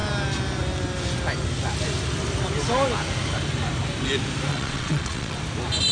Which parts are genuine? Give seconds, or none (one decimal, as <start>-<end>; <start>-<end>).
0.0-4.5; 5.4-5.9